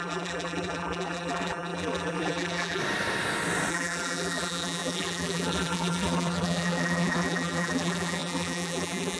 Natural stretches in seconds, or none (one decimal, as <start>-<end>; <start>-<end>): 2.8-3.7